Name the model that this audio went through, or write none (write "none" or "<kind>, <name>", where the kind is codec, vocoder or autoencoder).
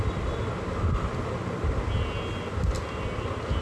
none